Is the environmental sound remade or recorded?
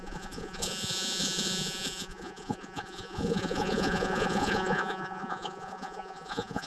remade